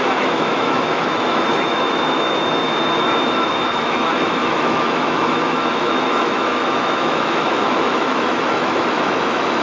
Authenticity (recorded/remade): remade